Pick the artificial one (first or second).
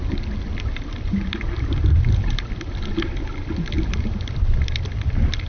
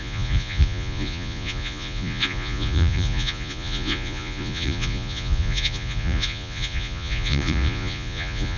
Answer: second